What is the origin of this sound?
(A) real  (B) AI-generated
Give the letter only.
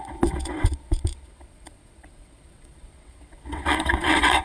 B